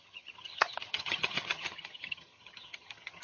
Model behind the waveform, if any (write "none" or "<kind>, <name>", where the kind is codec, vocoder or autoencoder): vocoder, HiFi-GAN